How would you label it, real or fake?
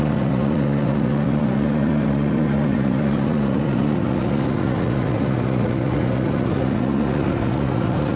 fake